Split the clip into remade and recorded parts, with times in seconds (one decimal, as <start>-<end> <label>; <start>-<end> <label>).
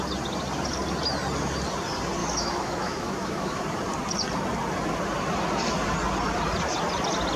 0.0-2.2 recorded; 2.2-3.6 remade; 3.6-7.4 recorded